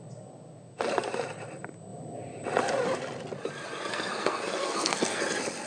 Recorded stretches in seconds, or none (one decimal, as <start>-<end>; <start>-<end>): 0.0-3.9; 5.2-5.7